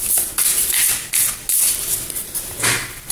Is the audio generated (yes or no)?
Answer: no